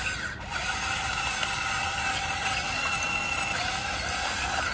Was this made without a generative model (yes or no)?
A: yes